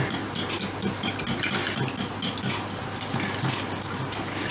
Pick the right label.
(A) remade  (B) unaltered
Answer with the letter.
B